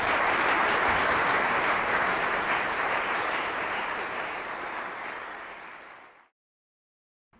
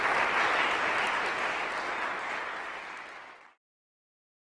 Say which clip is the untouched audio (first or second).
second